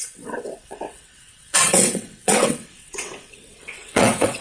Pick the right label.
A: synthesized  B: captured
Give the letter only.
A